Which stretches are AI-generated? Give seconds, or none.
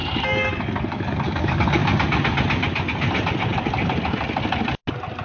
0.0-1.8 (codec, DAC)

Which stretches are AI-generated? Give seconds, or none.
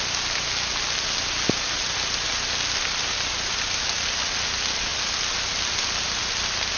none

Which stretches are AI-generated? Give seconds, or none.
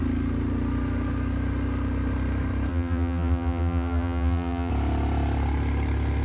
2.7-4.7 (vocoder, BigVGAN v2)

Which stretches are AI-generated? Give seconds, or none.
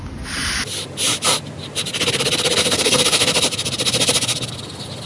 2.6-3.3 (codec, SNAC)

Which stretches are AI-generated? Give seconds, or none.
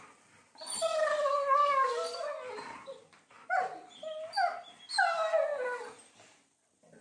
none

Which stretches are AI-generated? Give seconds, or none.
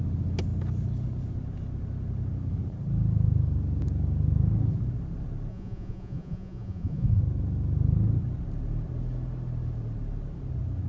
5.5-7.2 (vocoder, Vocos)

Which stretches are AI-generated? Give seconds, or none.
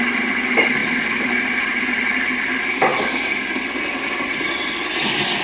none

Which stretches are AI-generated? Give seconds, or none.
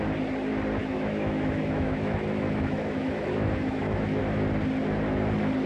0.8-4.2 (autoencoder, DAC-VAE)